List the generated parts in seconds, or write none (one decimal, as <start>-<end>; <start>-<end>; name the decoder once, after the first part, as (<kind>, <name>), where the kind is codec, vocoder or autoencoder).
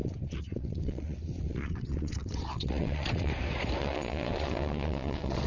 0.0-3.3 (vocoder, WaveNeXt); 3.8-5.5